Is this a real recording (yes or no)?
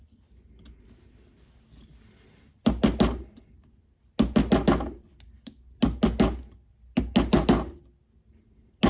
yes